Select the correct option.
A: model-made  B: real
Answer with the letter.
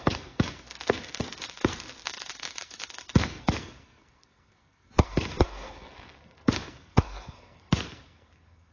A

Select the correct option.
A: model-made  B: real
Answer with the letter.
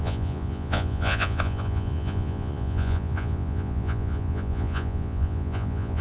A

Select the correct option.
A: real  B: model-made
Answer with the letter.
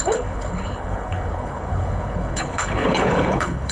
B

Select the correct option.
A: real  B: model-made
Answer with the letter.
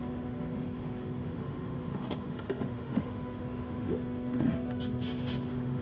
B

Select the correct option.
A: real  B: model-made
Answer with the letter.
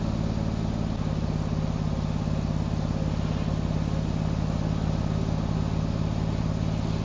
A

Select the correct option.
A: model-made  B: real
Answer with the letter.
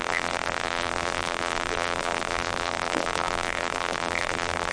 A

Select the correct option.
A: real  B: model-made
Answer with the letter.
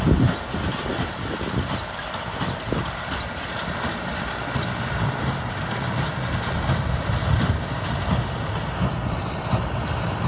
A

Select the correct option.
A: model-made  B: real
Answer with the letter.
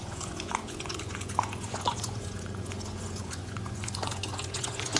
A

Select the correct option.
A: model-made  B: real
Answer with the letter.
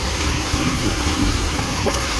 A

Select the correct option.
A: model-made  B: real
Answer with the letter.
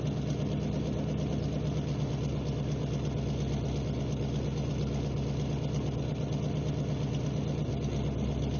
B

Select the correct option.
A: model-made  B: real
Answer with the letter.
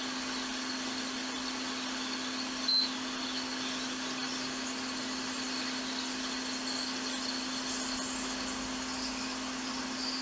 B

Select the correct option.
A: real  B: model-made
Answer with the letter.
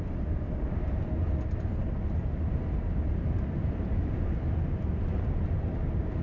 A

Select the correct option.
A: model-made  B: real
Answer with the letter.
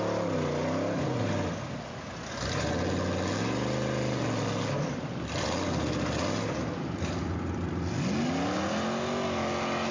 B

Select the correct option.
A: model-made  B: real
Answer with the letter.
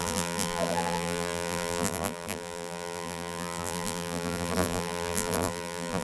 A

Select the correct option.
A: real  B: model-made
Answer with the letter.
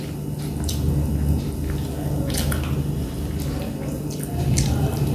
A